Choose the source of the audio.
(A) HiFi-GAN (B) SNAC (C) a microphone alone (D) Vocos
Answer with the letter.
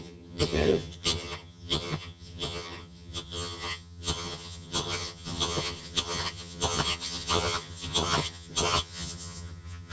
A